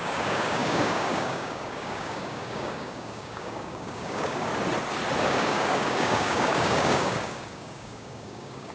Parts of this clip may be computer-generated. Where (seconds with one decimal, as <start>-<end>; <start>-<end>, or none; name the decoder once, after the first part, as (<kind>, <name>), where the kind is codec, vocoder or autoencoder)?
0.0-4.5 (codec, DAC); 5.2-8.7